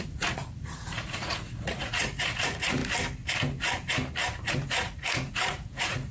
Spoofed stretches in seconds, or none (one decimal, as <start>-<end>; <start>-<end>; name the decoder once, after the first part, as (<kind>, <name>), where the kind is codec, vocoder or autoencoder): 0.0-2.8 (vocoder, Vocos); 4.5-6.1